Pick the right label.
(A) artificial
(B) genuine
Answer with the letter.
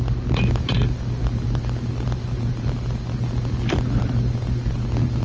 B